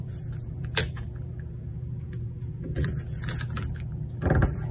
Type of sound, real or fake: fake